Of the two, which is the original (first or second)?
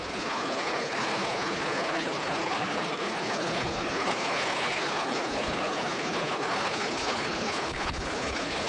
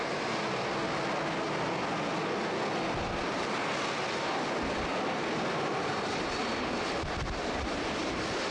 second